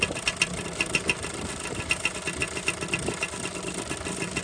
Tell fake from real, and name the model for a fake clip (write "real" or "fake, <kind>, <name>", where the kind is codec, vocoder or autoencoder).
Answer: real